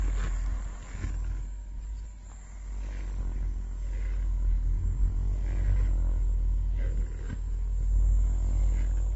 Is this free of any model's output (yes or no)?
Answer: yes